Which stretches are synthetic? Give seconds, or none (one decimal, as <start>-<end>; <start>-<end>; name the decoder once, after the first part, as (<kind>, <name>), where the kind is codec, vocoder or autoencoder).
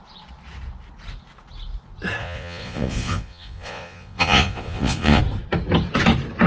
2.2-5.2 (vocoder, Vocos)